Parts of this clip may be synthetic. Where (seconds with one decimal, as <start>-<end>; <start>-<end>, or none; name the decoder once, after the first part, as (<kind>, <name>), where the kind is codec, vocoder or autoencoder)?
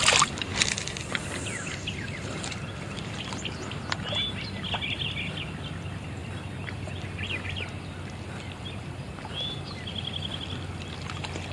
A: none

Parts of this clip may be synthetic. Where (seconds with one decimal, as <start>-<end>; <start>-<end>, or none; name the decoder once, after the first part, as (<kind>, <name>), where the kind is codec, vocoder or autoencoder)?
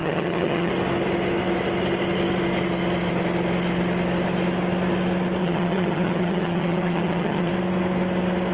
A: 0.0-0.7 (vocoder, HiFi-GAN); 5.4-7.5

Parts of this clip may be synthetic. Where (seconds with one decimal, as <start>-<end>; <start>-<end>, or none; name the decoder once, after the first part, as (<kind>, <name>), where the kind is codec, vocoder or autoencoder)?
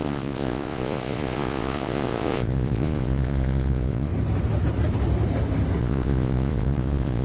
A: 0.0-4.1 (vocoder, Vocos); 5.8-7.2